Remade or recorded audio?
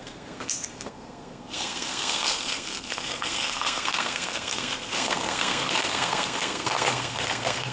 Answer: remade